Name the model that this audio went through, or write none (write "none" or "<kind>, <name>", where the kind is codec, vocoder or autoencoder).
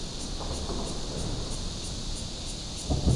none